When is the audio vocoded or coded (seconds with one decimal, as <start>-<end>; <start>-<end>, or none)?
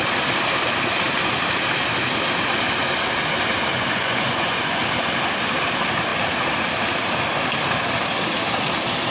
3.7-4.8